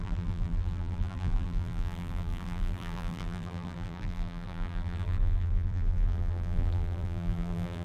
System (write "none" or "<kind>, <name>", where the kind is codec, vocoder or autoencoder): vocoder, BigVGAN v2